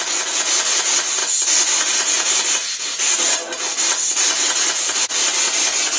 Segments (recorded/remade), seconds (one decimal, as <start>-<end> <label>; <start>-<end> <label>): 0.0-6.0 recorded